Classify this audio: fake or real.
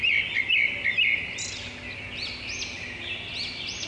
real